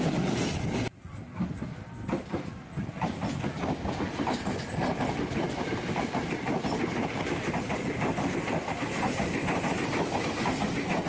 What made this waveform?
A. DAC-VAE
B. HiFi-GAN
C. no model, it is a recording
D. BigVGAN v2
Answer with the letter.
C